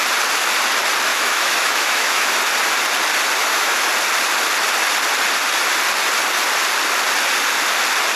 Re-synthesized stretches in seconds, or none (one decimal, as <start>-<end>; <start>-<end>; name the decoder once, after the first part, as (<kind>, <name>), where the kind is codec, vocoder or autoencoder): 1.1-2.4 (autoencoder, DAC-VAE); 3.4-3.9